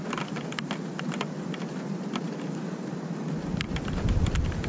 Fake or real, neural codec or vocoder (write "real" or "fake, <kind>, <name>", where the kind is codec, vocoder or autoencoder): real